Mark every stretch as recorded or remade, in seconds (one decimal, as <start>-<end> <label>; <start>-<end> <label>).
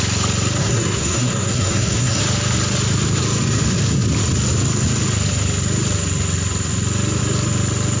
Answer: 0.0-0.6 recorded; 0.6-2.2 remade; 2.2-8.0 recorded